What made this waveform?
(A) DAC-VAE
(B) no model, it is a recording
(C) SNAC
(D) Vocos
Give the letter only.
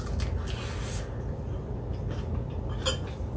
B